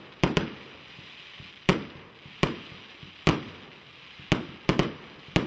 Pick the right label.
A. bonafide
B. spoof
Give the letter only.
A